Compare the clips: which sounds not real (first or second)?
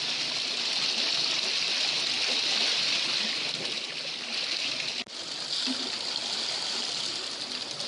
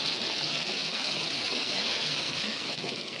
second